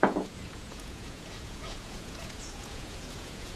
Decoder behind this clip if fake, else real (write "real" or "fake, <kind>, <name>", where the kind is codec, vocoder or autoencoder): fake, vocoder, Vocos